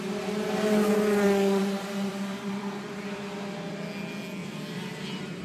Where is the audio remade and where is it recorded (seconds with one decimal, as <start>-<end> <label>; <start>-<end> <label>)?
0.0-1.6 recorded; 1.6-3.7 remade; 3.7-4.4 recorded; 4.4-5.4 remade